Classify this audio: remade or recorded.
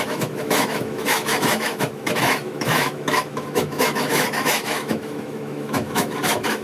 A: remade